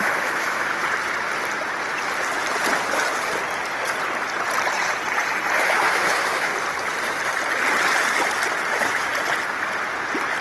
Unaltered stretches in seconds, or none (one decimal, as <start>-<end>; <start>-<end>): 0.8-5.6; 6.5-8.7; 9.1-10.4